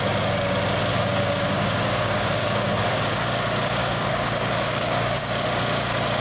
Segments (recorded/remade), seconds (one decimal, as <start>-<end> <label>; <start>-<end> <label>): 0.0-0.9 recorded; 0.9-3.3 remade; 3.3-3.8 recorded; 3.8-5.3 remade; 5.3-6.2 recorded